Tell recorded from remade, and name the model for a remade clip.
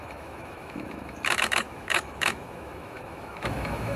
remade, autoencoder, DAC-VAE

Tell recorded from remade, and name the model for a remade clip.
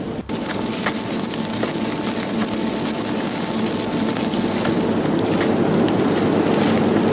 recorded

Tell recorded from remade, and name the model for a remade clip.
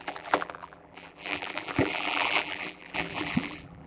remade, vocoder, BigVGAN v2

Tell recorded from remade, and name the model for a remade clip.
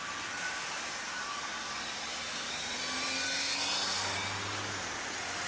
recorded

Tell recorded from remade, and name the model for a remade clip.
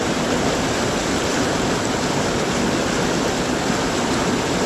recorded